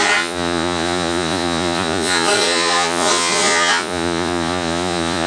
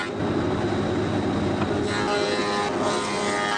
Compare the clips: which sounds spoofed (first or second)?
first